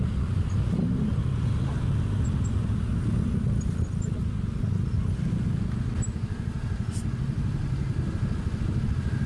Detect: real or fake real